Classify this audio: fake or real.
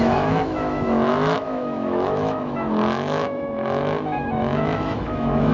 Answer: fake